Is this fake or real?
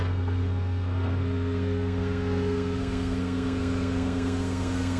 fake